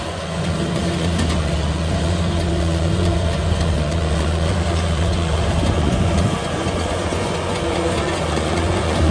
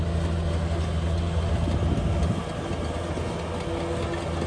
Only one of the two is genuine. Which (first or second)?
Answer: second